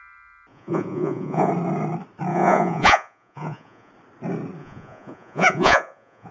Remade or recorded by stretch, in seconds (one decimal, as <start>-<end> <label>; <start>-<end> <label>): 0.0-0.5 recorded; 0.5-1.5 remade; 1.5-2.3 recorded; 2.3-3.9 remade; 3.9-4.6 recorded; 4.6-6.3 remade